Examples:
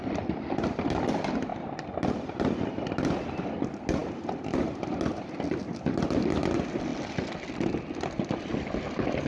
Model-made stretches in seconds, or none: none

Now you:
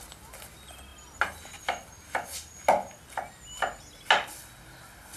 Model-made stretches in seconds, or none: none

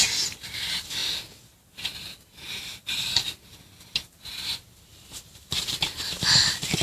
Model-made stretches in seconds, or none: 4.9-5.5 (vocoder, BigVGAN v2)

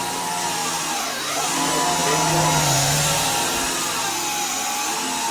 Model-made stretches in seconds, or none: 0.6-1.2 (vocoder, BigVGAN v2)